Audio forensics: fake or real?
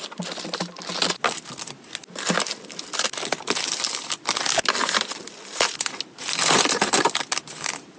real